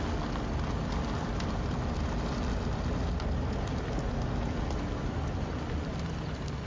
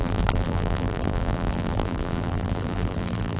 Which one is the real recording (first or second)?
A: first